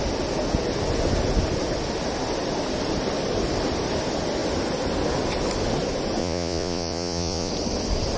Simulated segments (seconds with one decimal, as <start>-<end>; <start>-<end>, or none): 6.2-7.5